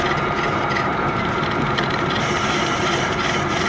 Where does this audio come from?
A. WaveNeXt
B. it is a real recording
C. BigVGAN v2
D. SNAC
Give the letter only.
C